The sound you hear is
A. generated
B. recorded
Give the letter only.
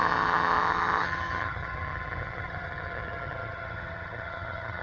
A